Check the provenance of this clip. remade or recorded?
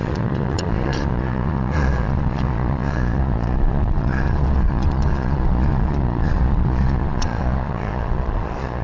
remade